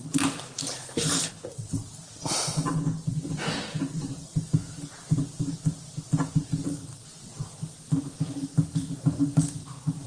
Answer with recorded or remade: recorded